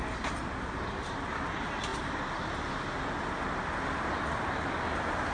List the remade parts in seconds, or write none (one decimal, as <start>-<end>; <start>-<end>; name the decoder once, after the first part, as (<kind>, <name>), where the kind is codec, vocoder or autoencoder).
none